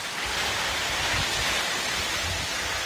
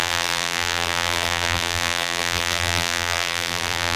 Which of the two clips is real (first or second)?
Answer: first